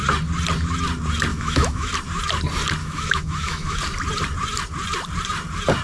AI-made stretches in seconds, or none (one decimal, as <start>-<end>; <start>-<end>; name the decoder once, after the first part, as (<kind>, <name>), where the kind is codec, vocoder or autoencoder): 1.3-1.9 (autoencoder, DAC-VAE); 2.8-3.8